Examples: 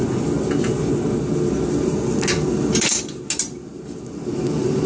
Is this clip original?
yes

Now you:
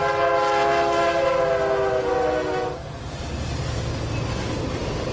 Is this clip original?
yes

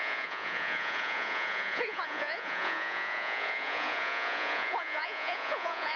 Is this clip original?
no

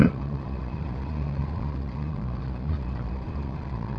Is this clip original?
no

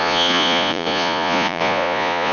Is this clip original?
no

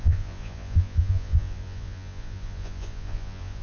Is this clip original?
no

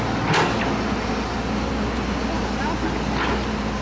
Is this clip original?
yes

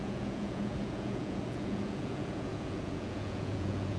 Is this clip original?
no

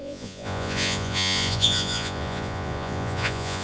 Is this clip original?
no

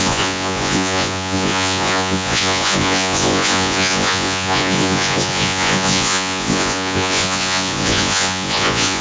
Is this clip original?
no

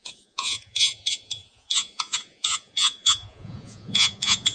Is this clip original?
no